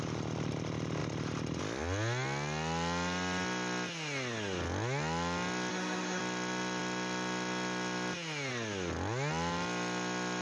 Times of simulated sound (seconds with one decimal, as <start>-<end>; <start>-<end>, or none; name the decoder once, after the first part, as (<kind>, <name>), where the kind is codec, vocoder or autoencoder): 5.7-6.2 (autoencoder, DAC-VAE)